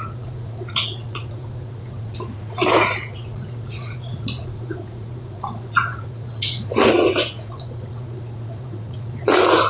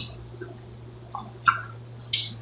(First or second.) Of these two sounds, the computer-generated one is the first